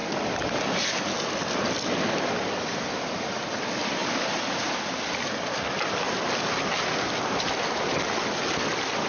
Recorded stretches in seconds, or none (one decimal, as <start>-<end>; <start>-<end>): 0.0-9.1